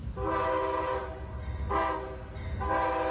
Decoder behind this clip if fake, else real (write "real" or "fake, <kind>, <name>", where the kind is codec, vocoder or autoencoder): real